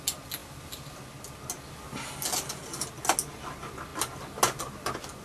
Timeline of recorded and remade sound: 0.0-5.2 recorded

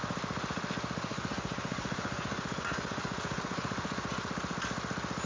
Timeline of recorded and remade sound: 0.0-1.1 recorded; 1.1-4.3 remade; 4.3-5.3 recorded

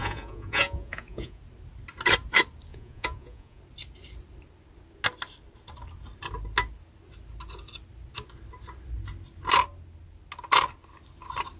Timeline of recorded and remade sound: 0.0-1.4 remade; 1.4-2.7 recorded; 2.7-3.6 remade; 3.6-11.6 recorded